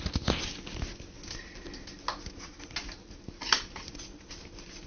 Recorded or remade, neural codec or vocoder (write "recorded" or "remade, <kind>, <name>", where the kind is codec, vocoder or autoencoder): recorded